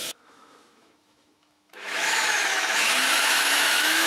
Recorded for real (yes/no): no